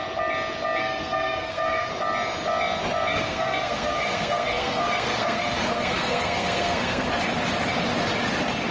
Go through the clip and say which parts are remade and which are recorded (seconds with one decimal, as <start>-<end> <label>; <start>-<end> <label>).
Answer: 0.0-0.8 recorded; 0.8-1.9 remade; 1.9-3.1 recorded; 3.1-7.1 remade; 7.1-8.7 recorded